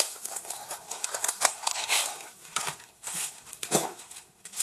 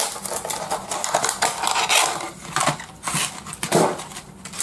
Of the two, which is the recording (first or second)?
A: second